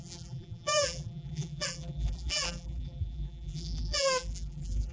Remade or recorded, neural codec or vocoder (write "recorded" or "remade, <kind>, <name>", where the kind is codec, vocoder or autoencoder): remade, vocoder, BigVGAN v2